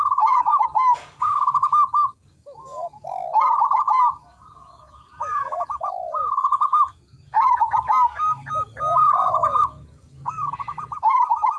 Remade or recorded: remade